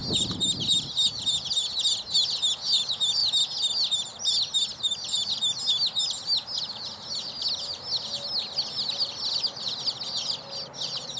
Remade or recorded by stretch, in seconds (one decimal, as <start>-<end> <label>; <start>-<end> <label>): 0.0-11.2 recorded